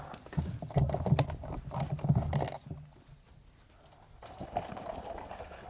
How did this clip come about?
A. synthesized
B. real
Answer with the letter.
B